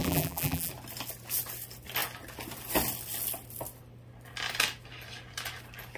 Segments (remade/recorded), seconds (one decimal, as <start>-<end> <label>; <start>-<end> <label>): 0.0-0.7 remade; 0.7-6.0 recorded